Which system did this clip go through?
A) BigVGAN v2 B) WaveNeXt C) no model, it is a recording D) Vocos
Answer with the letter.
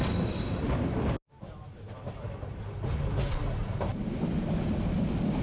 C